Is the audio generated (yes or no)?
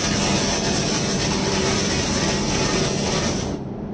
yes